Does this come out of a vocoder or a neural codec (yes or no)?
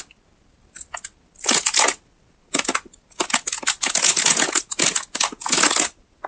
no